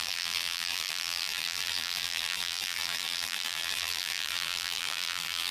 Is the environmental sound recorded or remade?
remade